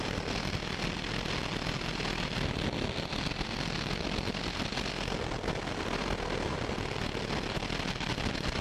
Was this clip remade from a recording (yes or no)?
no